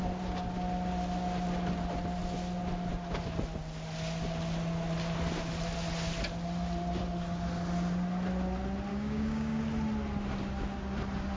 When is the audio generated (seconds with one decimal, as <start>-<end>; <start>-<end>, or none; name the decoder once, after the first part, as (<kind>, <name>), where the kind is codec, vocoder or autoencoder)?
8.9-9.6 (codec, DAC)